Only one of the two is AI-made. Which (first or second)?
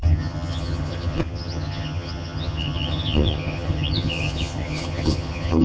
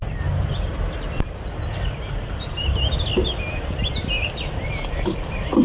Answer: first